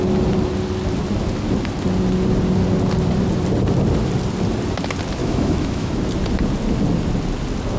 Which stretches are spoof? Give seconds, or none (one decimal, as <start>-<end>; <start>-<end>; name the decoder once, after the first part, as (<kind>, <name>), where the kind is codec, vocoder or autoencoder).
5.2-5.9 (autoencoder, DAC-VAE)